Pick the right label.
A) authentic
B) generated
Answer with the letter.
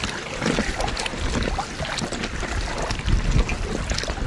A